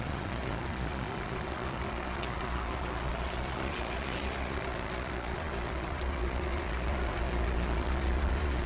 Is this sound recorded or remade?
remade